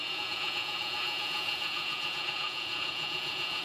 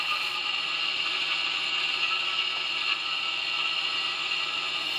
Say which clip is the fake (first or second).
first